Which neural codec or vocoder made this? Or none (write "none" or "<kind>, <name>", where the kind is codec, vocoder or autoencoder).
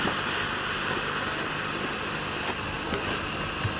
none